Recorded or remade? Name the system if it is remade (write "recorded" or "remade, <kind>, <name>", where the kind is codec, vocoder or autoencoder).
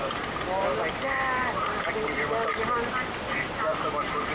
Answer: recorded